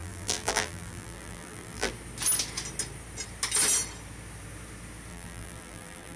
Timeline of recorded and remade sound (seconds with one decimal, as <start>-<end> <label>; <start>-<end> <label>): 0.0-1.9 remade; 1.9-5.1 recorded; 5.1-6.2 remade